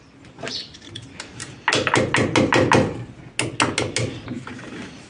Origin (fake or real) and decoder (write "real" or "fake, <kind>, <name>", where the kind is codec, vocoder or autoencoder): real